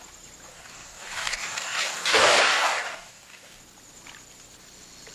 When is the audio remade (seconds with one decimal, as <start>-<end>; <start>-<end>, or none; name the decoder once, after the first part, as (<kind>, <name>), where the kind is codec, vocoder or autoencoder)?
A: 0.5-3.6 (codec, DAC)